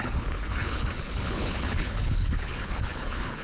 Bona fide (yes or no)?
no